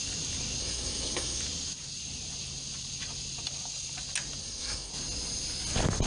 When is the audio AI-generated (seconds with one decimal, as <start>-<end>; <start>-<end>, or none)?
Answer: 0.6-1.4; 4.4-4.9